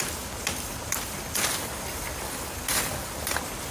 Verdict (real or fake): real